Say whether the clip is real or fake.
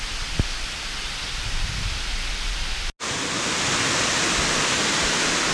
real